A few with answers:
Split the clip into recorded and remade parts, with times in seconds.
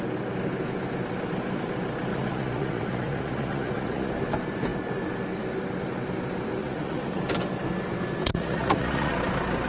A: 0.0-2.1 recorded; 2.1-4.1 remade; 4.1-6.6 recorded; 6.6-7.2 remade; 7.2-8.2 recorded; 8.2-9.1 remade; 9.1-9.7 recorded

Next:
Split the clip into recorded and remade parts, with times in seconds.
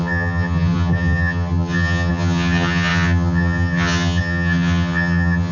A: 0.0-5.5 remade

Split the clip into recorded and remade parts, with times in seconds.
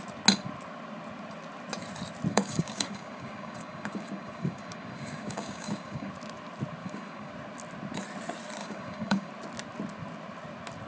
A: 0.0-2.3 recorded; 2.3-6.1 remade; 6.1-6.8 recorded; 6.8-7.3 remade; 7.3-8.6 recorded; 8.6-9.3 remade; 9.3-10.9 recorded